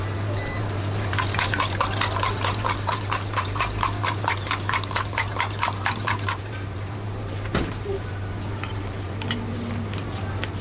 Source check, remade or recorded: remade